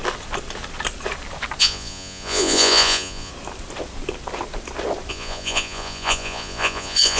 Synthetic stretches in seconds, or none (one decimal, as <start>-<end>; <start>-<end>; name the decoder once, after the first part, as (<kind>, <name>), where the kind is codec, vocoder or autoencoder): 1.6-3.3 (vocoder, Vocos); 5.1-7.2